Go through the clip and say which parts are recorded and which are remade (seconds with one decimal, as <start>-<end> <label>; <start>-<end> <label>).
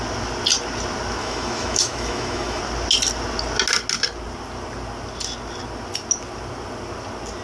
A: 0.0-1.2 recorded; 1.2-2.6 remade; 2.6-7.4 recorded